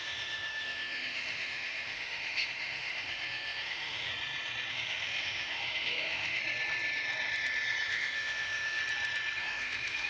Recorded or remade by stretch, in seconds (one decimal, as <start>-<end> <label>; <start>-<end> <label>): 0.0-4.1 remade; 4.1-4.7 recorded; 4.7-6.4 remade; 6.4-7.9 recorded; 7.9-8.8 remade; 8.8-9.4 recorded; 9.4-10.1 remade